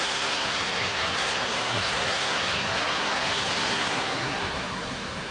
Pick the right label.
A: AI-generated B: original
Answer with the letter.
A